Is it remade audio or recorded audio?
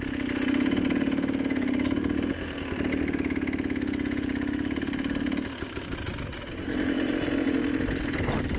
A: recorded